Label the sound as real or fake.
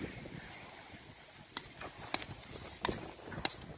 real